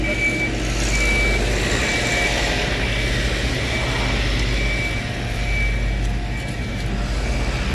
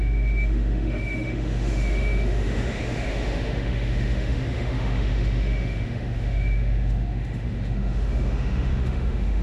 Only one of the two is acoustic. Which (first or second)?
first